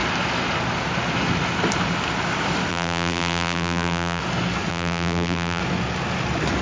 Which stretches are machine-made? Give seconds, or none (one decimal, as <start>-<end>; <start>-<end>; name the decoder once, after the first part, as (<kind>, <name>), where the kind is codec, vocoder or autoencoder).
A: 2.7-4.2 (vocoder, BigVGAN v2); 4.7-5.6